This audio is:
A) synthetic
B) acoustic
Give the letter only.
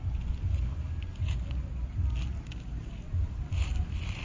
B